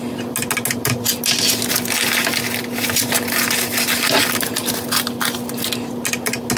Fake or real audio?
real